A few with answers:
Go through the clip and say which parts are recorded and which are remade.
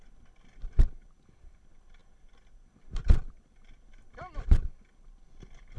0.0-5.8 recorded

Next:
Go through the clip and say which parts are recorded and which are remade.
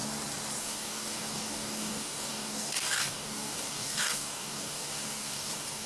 0.0-0.6 recorded; 0.6-5.9 remade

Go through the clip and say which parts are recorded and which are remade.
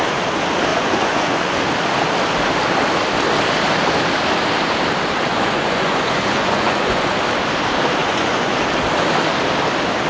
0.0-0.7 recorded; 0.7-1.6 remade; 1.6-5.3 recorded; 5.3-7.1 remade; 7.1-8.0 recorded; 8.0-8.6 remade; 8.6-10.1 recorded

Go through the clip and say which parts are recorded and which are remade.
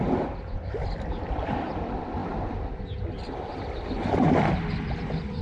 0.0-5.4 recorded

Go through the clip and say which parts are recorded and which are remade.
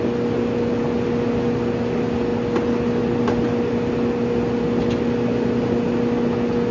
0.0-6.7 recorded